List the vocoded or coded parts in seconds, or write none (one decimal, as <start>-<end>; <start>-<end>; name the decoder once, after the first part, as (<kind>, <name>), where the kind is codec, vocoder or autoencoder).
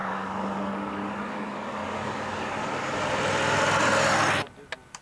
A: 0.0-3.0 (codec, DAC)